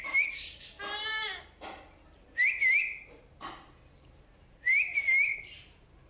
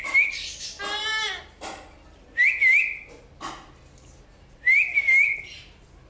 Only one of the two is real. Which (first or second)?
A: second